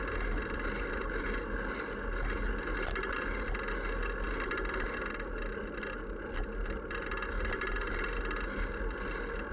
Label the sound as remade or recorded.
recorded